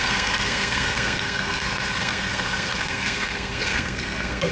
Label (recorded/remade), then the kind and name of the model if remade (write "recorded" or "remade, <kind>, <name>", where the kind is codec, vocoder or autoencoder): remade, codec, SNAC